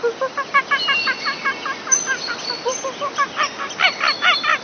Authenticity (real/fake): real